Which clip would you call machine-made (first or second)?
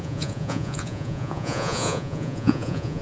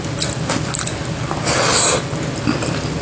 first